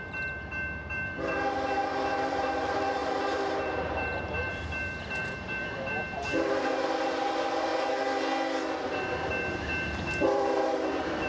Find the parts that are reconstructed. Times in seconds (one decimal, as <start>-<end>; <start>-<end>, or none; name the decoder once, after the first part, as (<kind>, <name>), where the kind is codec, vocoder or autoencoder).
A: 0.0-7.7 (vocoder, BigVGAN v2); 8.8-11.3